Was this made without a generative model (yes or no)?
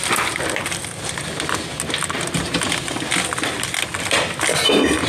yes